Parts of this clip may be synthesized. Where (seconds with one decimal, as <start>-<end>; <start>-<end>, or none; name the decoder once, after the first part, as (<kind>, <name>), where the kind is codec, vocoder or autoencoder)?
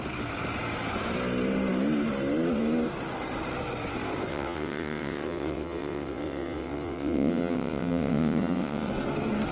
4.3-8.9 (vocoder, WaveNeXt)